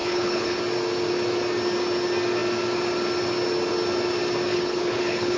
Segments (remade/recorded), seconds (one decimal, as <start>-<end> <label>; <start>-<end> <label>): 0.0-0.6 remade; 0.6-4.5 recorded; 4.5-5.4 remade